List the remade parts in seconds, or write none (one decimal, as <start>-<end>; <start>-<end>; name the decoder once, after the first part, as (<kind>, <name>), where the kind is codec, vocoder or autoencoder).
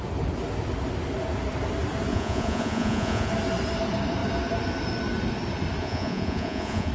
2.1-3.3 (vocoder, Vocos); 5.8-6.9